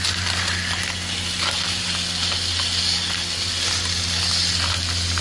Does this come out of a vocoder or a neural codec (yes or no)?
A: no